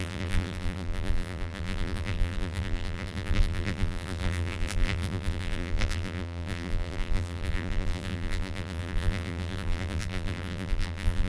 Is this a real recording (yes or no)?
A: no